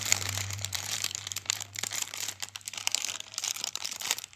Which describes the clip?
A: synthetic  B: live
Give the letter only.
A